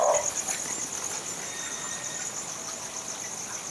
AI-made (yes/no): no